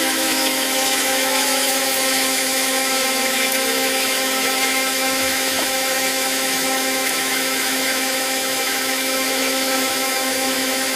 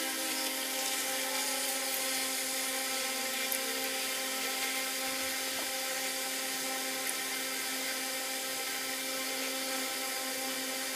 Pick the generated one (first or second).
first